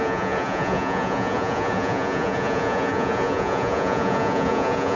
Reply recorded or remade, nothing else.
remade